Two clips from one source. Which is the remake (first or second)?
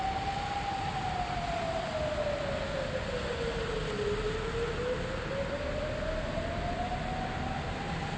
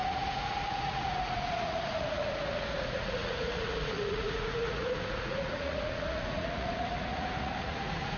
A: second